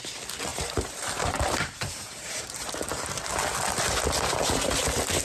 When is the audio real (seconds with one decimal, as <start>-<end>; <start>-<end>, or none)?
0.0-0.5; 2.7-5.2